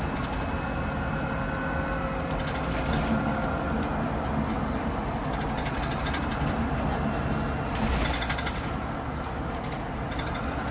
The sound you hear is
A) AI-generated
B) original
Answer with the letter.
B